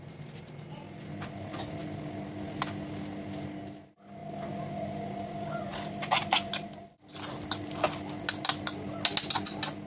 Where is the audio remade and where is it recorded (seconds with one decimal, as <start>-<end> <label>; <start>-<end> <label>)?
0.0-9.9 recorded